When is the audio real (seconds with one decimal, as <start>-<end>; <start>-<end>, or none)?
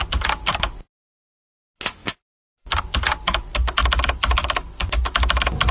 0.0-5.7